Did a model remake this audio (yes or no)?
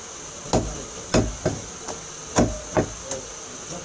no